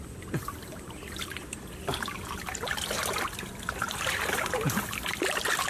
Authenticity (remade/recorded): remade